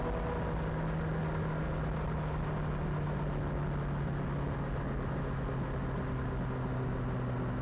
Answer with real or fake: real